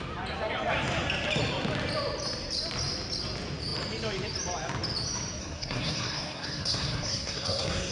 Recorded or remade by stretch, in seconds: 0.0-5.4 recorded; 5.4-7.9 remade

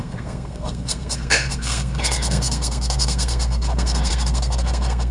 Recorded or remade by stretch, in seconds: 0.0-5.1 remade

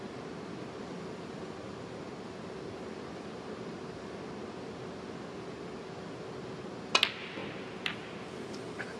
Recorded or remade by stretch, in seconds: 0.0-9.0 recorded

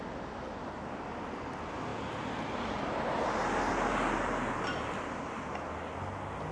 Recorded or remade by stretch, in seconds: 0.0-6.5 recorded

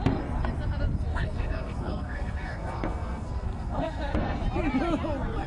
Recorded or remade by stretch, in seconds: 0.0-1.1 recorded; 1.1-4.4 remade; 4.4-5.5 recorded

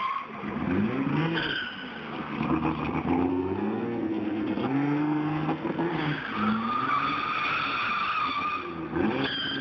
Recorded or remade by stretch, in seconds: 0.0-1.1 recorded; 1.1-1.6 remade; 1.6-3.3 recorded; 3.3-5.9 remade; 5.9-9.6 recorded